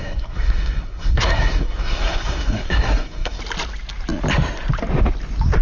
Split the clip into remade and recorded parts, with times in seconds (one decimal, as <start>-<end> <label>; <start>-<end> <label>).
0.0-3.4 remade; 3.4-5.6 recorded